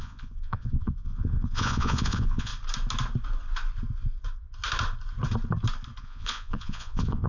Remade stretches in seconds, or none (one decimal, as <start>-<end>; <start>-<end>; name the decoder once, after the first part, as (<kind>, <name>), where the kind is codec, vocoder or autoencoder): 0.0-2.5 (vocoder, Vocos); 6.0-7.3